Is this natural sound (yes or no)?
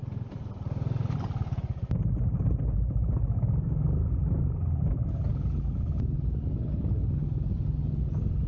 yes